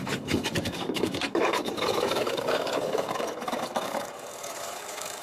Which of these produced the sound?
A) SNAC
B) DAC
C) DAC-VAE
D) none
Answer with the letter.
B